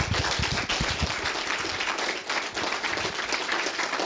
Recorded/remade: recorded